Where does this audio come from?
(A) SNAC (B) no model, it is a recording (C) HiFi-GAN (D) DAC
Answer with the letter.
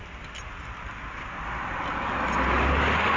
B